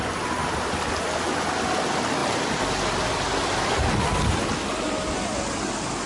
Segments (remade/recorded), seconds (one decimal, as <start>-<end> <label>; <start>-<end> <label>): 0.0-0.4 recorded; 0.4-0.9 remade; 0.9-6.1 recorded